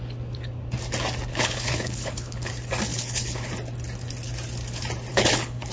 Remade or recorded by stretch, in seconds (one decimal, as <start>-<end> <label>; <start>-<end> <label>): 0.0-1.3 recorded; 1.3-2.5 remade; 2.5-2.9 recorded; 2.9-3.5 remade; 3.5-5.1 recorded; 5.1-5.7 remade